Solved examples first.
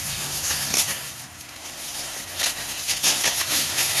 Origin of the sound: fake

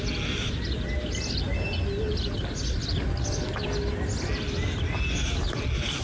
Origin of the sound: real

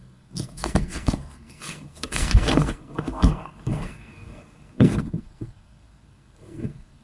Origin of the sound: fake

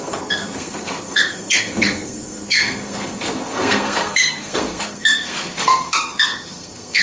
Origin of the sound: fake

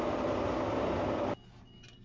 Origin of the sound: real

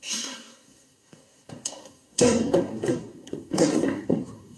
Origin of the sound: fake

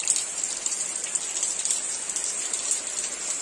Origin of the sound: real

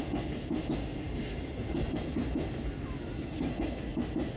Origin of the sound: real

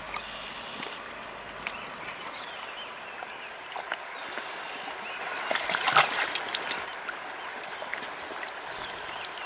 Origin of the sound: real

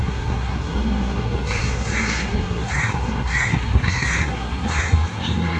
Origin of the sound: fake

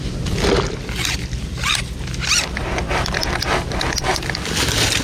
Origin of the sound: real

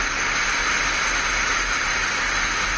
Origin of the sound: real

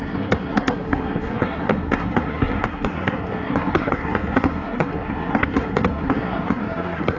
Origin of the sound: fake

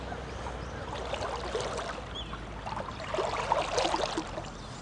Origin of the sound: real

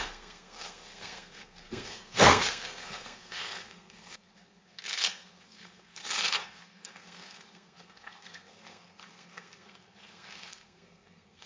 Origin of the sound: fake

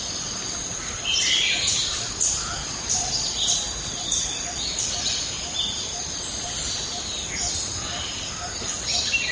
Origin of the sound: real